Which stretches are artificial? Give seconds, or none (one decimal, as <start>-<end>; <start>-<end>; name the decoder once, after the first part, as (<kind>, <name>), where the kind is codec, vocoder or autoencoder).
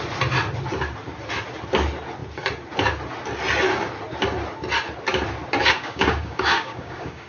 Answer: 5.6-7.3 (codec, DAC)